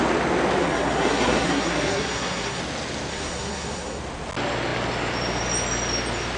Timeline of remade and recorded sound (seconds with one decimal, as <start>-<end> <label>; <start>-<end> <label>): 0.0-0.6 recorded; 0.6-2.6 remade; 2.6-3.1 recorded; 3.1-4.0 remade; 4.0-6.4 recorded